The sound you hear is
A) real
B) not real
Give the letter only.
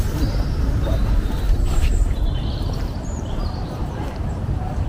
B